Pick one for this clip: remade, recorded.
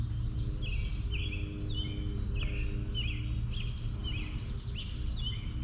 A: recorded